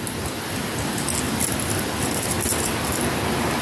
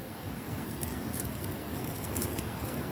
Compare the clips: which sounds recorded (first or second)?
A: first